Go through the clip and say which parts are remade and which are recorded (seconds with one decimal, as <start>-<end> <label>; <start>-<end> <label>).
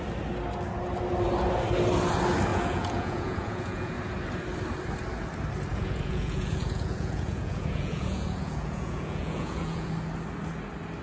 0.0-2.5 recorded; 2.5-3.9 remade; 3.9-5.7 recorded; 5.7-9.9 remade; 9.9-11.0 recorded